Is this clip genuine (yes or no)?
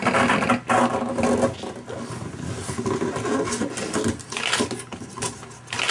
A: yes